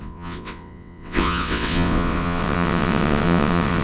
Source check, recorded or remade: remade